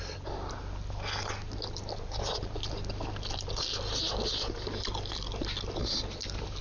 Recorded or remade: recorded